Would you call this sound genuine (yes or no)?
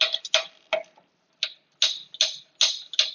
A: yes